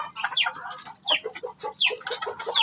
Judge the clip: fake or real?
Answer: real